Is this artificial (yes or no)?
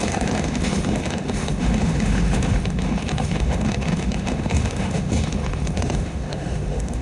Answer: yes